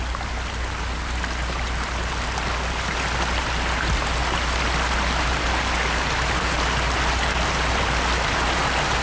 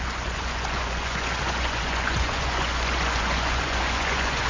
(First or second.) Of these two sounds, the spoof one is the second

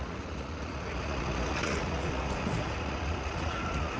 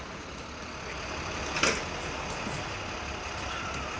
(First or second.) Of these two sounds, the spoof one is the first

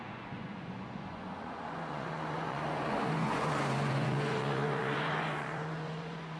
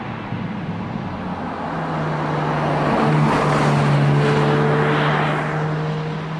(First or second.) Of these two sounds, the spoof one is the first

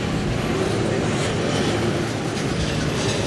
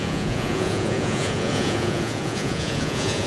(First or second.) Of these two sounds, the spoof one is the second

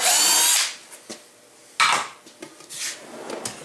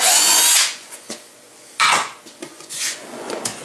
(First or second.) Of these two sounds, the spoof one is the second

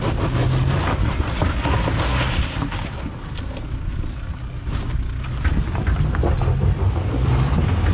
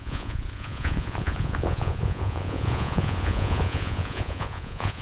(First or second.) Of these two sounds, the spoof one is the second